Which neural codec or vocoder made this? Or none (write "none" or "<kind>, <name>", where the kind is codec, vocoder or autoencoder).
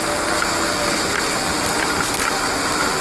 none